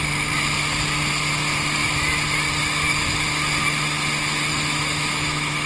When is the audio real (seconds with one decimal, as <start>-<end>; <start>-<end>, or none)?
0.0-4.5